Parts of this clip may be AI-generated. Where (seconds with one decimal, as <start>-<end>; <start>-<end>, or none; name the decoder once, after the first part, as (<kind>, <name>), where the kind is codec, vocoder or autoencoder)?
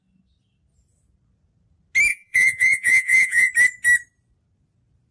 2.1-3.5 (vocoder, Vocos)